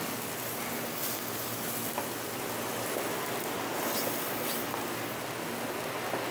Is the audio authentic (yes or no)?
yes